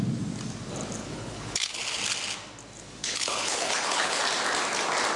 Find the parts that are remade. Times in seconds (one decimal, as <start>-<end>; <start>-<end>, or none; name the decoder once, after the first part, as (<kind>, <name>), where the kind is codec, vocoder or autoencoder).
1.0-2.0 (codec, HILCodec); 3.0-4.2